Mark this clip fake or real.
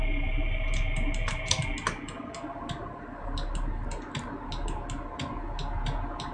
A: real